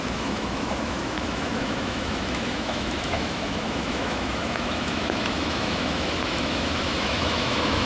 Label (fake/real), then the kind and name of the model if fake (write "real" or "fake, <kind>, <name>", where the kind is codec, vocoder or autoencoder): fake, autoencoder, DAC-VAE